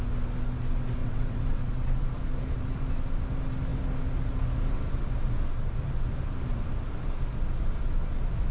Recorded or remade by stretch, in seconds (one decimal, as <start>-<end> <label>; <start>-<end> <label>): 0.0-1.0 recorded; 1.0-1.7 remade; 1.7-8.5 recorded